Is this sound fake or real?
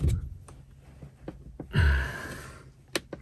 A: real